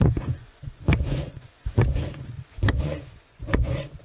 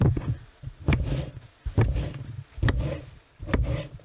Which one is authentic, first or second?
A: second